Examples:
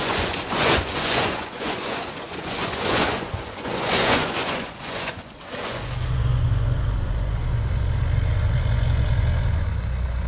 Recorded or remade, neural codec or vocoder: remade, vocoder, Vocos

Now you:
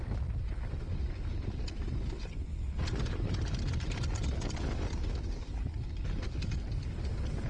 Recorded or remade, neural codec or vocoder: recorded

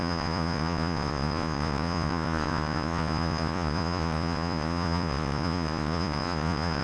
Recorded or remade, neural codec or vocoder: remade, vocoder, Vocos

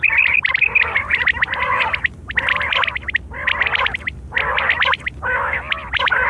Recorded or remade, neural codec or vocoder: recorded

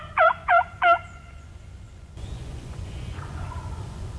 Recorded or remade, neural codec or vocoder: remade, vocoder, Vocos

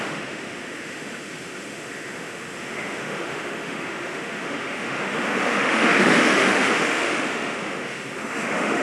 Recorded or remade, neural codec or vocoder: remade, autoencoder, DAC-VAE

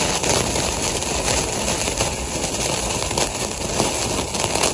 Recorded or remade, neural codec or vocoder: recorded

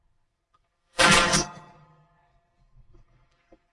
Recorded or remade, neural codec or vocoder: remade, codec, SNAC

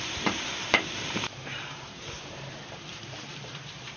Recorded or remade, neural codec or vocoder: remade, vocoder, BigVGAN v2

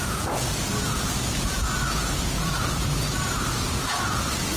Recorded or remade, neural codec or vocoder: remade, vocoder, Vocos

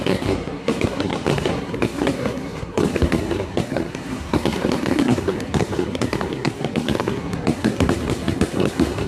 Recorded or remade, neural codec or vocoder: remade, codec, SNAC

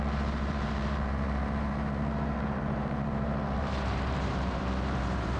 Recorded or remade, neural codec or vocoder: remade, vocoder, BigVGAN v2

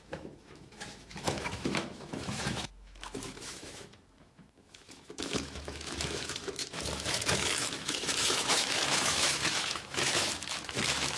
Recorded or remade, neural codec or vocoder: remade, autoencoder, DAC-VAE